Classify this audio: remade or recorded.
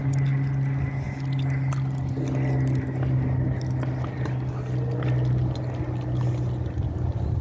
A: recorded